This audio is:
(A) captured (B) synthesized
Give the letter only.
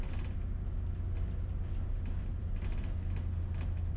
A